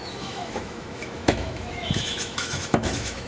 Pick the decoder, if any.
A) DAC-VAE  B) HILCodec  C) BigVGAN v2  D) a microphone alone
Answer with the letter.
A